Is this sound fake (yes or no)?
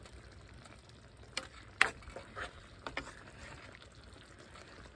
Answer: no